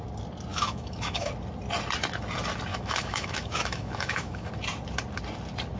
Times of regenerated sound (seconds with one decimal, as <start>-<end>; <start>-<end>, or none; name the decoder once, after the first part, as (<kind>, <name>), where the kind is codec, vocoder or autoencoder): 0.5-1.3 (autoencoder, DAC-VAE); 2.7-4.5